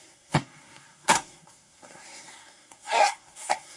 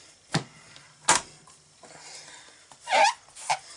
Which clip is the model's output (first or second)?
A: first